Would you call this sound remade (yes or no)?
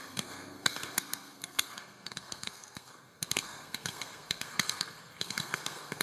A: yes